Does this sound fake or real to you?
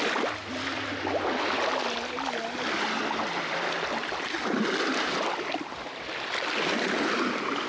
real